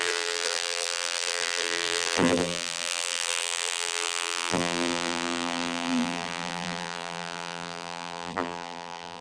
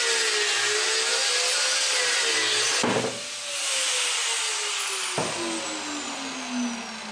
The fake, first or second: first